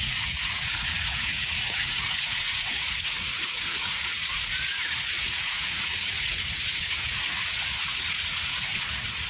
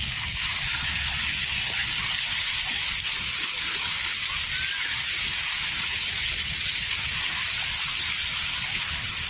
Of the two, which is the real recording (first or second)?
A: second